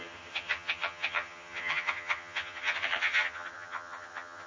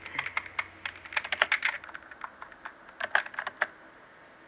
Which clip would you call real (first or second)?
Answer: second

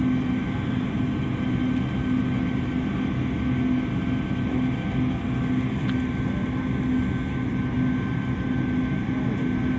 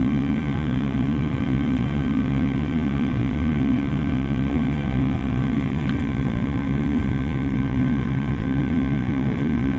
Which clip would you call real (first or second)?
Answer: first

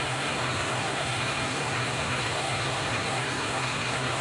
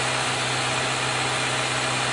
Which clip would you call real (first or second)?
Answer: second